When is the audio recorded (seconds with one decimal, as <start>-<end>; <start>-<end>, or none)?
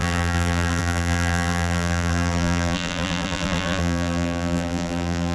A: none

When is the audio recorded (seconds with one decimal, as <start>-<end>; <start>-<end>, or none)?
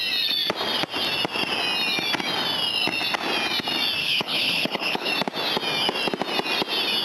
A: 0.0-4.0; 5.1-7.0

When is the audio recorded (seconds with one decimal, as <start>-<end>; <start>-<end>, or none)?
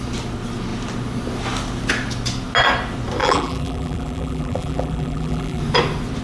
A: 0.0-3.2; 5.6-6.2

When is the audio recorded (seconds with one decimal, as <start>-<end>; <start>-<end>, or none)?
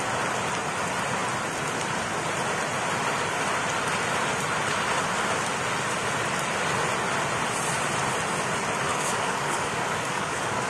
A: 0.0-8.9